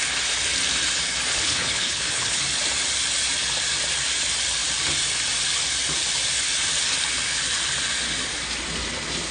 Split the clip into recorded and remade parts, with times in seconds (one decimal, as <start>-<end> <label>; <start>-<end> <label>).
0.0-1.3 recorded; 1.3-2.4 remade; 2.4-9.3 recorded